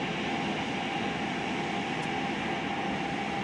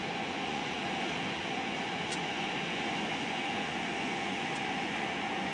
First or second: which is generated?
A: second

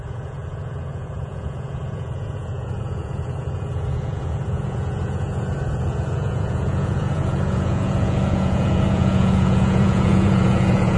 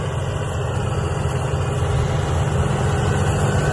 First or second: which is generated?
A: first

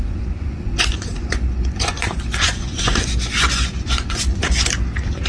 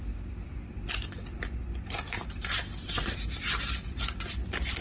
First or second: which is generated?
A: first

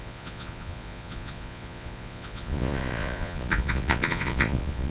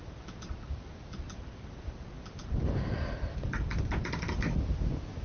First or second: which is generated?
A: first